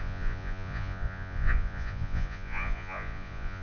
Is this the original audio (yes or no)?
no